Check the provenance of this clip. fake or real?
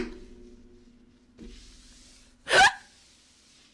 real